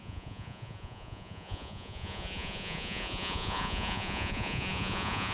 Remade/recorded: remade